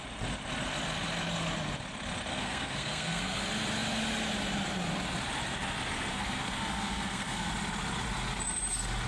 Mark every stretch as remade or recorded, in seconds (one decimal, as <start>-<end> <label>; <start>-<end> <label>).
0.0-2.3 recorded; 2.3-3.4 remade; 3.4-6.1 recorded; 6.1-7.5 remade; 7.5-9.1 recorded